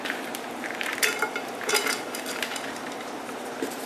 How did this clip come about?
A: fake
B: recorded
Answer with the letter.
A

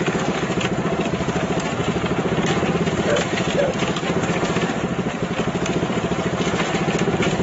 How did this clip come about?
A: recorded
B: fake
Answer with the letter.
B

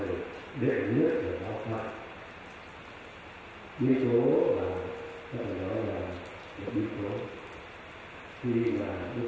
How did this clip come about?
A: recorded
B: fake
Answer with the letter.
A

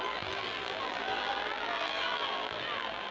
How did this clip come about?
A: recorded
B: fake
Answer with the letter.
B